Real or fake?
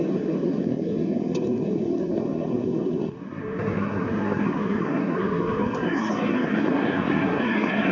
fake